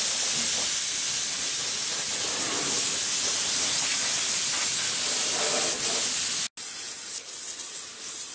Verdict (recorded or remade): recorded